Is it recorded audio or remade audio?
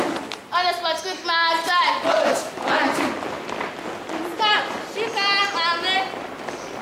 recorded